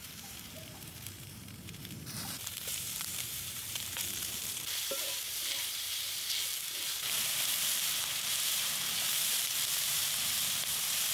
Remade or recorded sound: remade